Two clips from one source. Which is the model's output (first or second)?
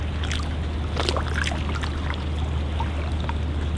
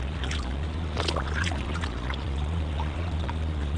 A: second